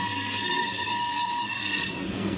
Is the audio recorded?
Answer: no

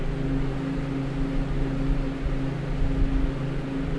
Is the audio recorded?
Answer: yes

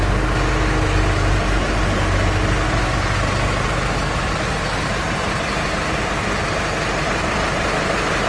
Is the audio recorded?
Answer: yes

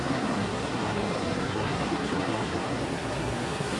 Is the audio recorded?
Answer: no